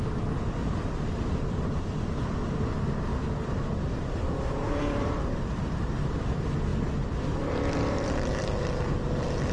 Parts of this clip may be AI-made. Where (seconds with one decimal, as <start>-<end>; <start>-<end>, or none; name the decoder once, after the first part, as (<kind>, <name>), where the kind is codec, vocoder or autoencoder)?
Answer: 0.0-9.5 (vocoder, BigVGAN v2)